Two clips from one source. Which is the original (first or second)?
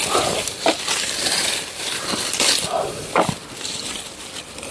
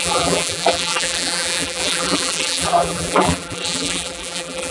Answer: first